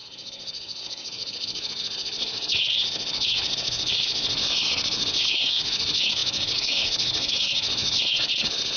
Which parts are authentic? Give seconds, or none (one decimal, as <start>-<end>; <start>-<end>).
none